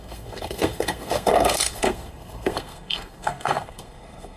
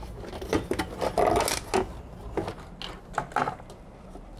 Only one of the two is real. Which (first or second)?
second